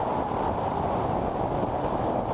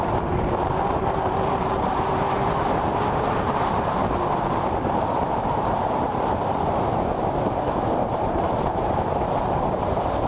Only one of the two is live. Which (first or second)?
first